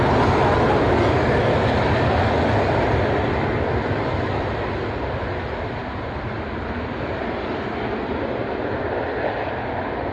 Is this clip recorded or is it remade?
recorded